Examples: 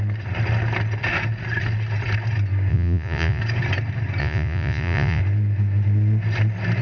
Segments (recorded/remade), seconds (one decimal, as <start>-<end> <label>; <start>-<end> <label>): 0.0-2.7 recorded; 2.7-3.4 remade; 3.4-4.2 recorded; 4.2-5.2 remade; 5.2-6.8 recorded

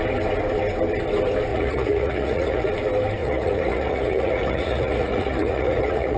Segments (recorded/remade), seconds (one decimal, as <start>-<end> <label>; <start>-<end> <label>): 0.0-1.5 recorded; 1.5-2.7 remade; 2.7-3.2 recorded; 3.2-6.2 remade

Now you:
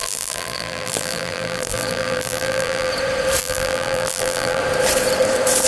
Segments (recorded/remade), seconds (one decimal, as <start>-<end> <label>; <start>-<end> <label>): 0.0-2.9 remade; 2.9-3.4 recorded; 3.4-4.6 remade; 4.6-5.7 recorded